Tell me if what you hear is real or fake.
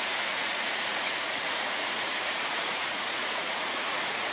fake